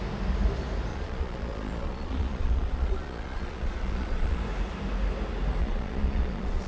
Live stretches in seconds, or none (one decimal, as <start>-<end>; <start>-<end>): 0.0-0.9; 4.4-5.6